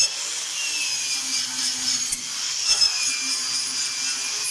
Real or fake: real